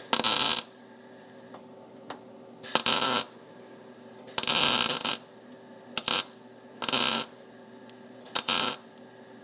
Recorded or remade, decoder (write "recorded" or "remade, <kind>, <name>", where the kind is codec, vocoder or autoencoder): recorded